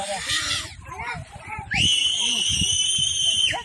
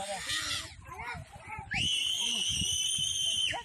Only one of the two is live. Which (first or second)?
second